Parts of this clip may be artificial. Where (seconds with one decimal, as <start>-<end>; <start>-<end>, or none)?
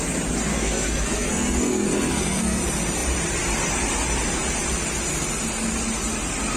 0.5-2.6